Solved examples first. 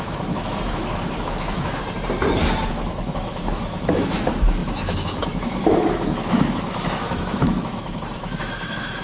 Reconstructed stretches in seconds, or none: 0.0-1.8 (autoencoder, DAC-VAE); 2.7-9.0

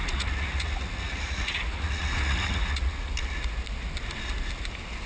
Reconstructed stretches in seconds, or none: 0.0-3.1 (vocoder, Vocos)

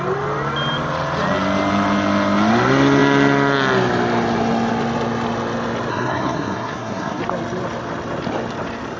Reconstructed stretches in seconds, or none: 5.9-7.2 (codec, SNAC)

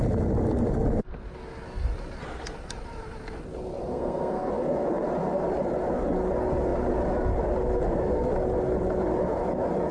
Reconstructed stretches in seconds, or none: 3.9-4.5 (codec, SNAC)

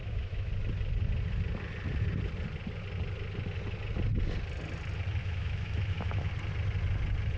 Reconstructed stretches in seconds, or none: 0.0-0.5 (autoencoder, DAC-VAE); 5.2-6.3

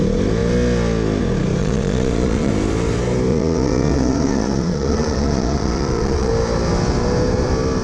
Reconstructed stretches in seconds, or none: 1.6-2.5 (vocoder, Vocos); 3.3-6.3